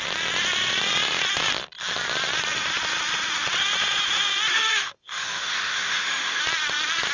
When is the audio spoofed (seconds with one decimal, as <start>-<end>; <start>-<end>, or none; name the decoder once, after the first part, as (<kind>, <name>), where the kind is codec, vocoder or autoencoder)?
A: 4.5-6.4 (autoencoder, DAC-VAE)